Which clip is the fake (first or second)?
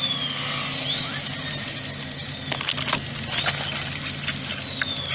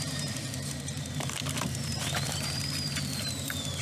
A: second